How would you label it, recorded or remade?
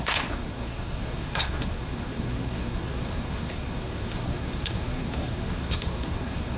remade